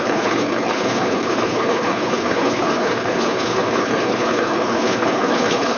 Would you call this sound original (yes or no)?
no